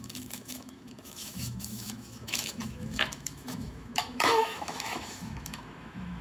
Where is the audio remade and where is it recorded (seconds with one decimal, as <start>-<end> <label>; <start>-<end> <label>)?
0.0-6.2 remade